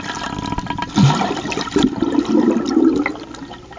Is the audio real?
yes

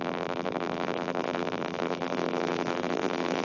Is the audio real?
no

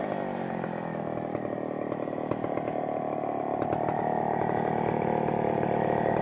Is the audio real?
yes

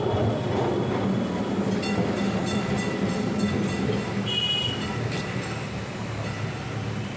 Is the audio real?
yes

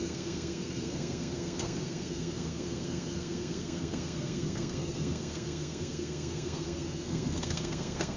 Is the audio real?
no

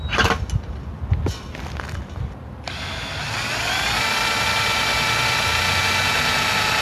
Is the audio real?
yes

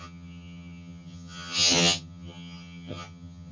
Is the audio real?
no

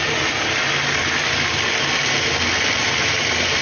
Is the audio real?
yes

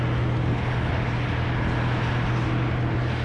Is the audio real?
yes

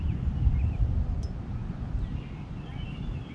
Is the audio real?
yes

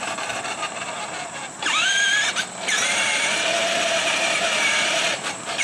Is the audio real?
no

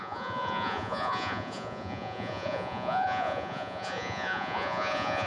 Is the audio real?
no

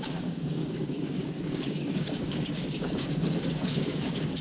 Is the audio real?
no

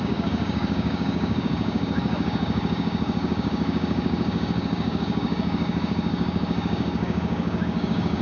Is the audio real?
no